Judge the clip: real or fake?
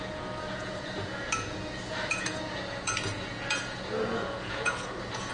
fake